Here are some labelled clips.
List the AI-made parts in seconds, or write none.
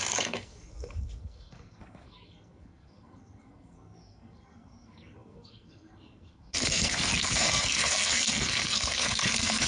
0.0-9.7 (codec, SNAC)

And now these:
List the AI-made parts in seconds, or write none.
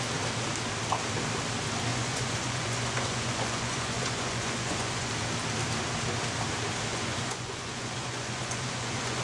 1.9-5.1 (vocoder, Vocos); 6.9-9.2